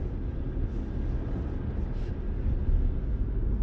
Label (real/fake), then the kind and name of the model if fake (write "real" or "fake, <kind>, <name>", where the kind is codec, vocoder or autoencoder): real